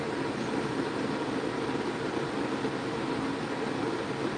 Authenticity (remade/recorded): recorded